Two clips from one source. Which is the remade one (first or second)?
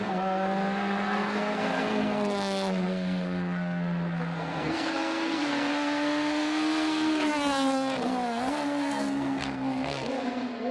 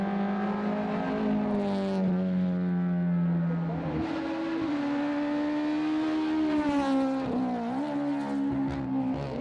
first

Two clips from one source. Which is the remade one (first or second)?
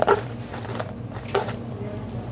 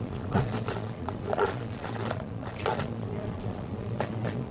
second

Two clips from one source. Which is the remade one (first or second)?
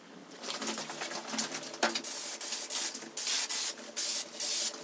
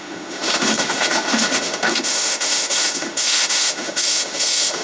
second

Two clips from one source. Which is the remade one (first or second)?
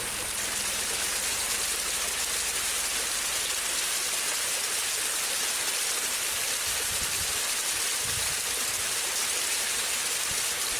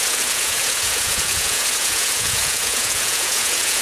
second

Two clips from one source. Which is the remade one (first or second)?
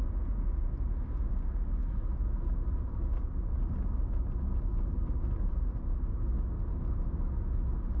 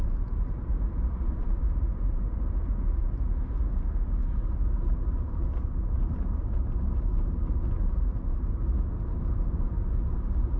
second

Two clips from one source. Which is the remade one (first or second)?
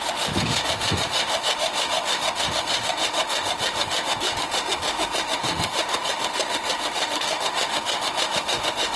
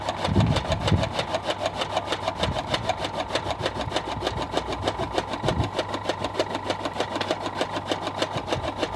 first